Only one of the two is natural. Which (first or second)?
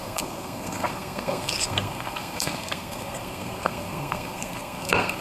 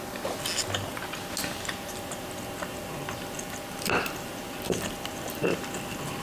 second